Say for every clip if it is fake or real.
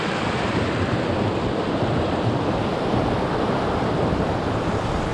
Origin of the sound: real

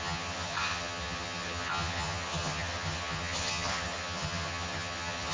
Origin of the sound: fake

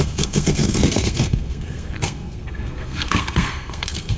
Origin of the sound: fake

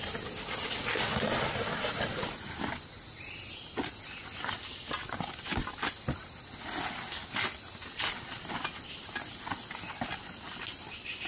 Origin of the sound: real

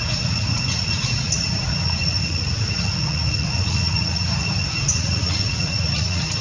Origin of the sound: fake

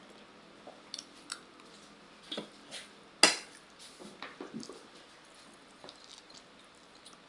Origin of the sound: real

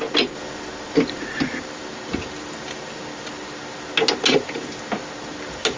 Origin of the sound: real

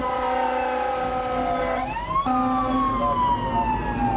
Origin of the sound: real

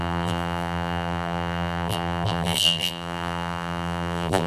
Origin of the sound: fake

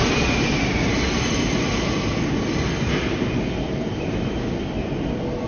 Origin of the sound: real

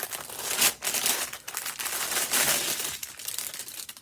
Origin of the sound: real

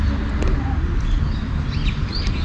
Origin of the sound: real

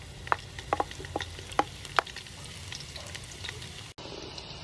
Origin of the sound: real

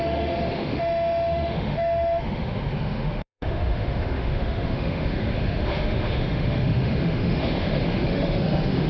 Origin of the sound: fake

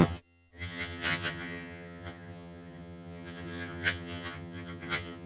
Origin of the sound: fake